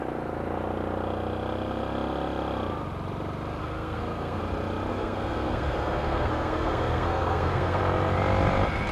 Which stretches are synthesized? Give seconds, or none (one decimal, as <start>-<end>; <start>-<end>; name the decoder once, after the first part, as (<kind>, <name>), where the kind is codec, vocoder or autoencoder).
3.6-4.4 (codec, SNAC); 4.9-7.8